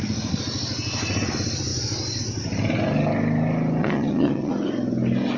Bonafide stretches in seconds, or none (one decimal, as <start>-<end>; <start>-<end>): 0.0-3.8; 4.5-5.4